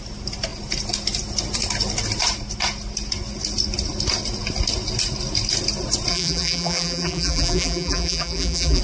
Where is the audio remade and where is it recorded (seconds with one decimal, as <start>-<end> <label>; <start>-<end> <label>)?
0.0-6.1 recorded; 6.1-8.8 remade